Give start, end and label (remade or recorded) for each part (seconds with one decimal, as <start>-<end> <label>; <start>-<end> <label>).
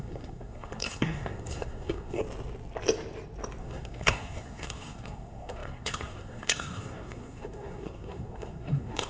0.0-2.2 remade; 2.2-3.6 recorded; 3.6-9.1 remade